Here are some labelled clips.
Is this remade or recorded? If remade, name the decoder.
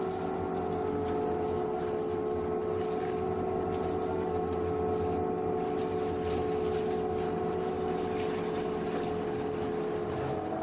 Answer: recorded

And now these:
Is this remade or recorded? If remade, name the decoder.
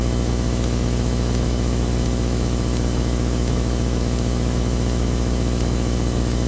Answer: remade, autoencoder, DAC-VAE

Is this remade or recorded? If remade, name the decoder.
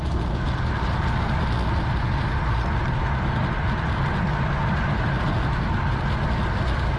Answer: recorded